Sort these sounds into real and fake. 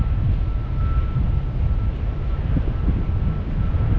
real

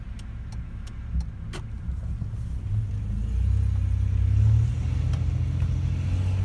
real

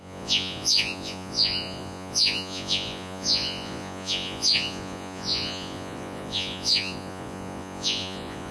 fake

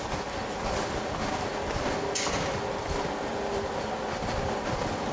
real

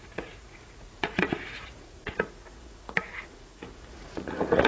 fake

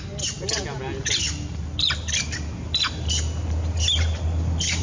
real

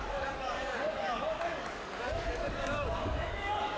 fake